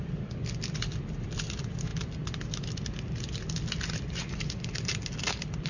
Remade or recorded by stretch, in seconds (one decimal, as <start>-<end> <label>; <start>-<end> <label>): 0.0-5.7 remade